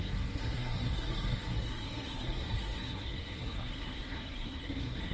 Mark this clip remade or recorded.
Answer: remade